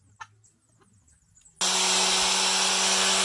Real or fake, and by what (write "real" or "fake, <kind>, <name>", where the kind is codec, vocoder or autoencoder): real